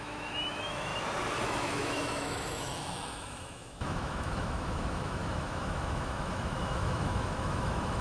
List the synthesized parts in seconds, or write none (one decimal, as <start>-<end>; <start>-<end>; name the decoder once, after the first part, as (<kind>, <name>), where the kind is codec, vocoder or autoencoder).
0.0-0.9 (autoencoder, DAC-VAE); 1.4-8.0